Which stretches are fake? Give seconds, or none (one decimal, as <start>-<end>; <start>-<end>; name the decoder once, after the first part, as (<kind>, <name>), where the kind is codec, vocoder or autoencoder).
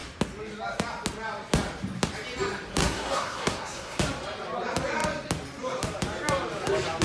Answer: 2.8-4.0 (codec, SNAC)